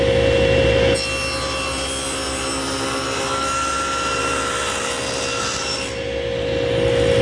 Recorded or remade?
recorded